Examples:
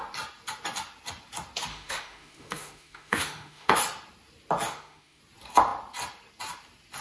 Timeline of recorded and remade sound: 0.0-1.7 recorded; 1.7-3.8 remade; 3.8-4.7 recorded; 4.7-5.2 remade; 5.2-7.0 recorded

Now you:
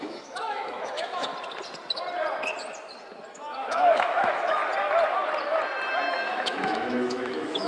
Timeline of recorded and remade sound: 0.0-1.3 remade; 1.3-3.3 recorded; 3.3-4.6 remade; 4.6-6.1 recorded; 6.1-7.7 remade

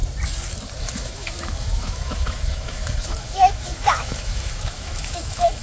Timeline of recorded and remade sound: 0.0-0.8 recorded; 0.8-5.6 remade

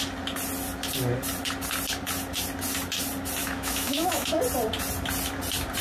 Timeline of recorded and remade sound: 0.0-3.4 recorded; 3.4-4.4 remade; 4.4-5.8 recorded

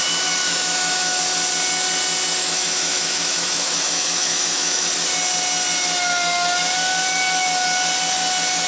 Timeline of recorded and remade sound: 0.0-0.4 recorded; 0.4-1.2 remade; 1.2-2.4 recorded; 2.4-4.9 remade; 4.9-8.7 recorded